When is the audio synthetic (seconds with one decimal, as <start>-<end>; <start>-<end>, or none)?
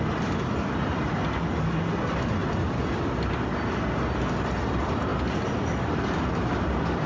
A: none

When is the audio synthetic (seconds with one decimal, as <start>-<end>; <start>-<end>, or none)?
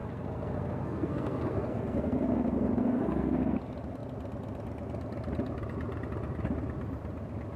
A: 0.0-3.6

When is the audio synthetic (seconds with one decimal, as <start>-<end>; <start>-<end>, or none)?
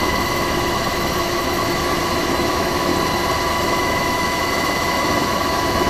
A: 0.0-2.9; 3.5-5.9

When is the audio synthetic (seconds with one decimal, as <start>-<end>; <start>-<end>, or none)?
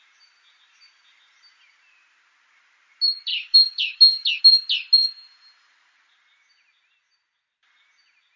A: 3.3-4.4